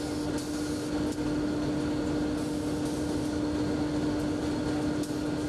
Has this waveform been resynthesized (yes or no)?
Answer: no